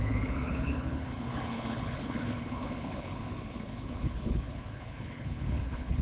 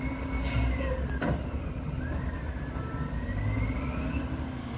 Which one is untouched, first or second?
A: second